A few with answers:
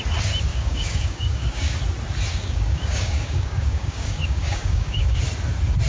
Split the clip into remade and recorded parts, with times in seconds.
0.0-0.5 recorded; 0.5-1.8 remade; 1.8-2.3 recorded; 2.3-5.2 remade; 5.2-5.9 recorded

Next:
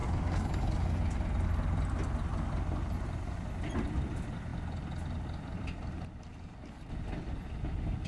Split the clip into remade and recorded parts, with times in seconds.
0.0-1.0 remade; 1.0-8.1 recorded

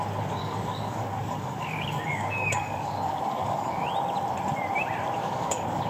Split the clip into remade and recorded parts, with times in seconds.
0.0-0.4 recorded; 0.4-3.9 remade; 3.9-5.2 recorded; 5.2-5.9 remade

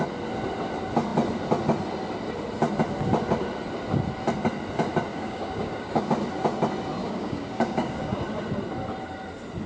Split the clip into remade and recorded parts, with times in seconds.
0.0-5.1 recorded; 5.1-6.0 remade; 6.0-7.0 recorded; 7.0-8.2 remade; 8.2-9.7 recorded

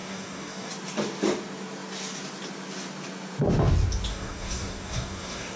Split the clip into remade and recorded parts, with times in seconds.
0.0-0.7 remade; 0.7-4.1 recorded; 4.1-5.6 remade